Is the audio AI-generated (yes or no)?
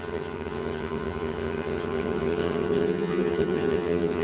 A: yes